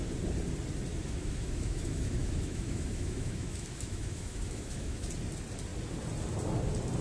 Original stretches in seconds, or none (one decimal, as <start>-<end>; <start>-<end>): 0.0-0.9; 5.1-7.0